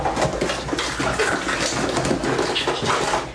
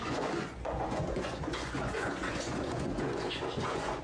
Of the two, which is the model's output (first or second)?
second